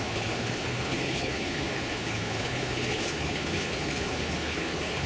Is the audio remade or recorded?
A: remade